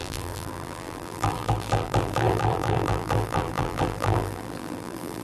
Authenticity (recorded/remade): remade